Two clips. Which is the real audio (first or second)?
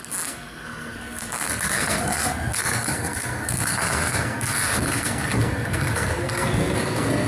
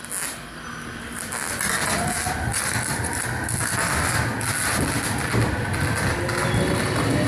second